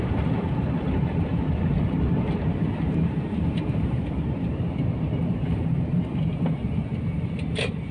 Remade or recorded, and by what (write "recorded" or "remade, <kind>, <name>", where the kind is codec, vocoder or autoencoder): remade, vocoder, BigVGAN v2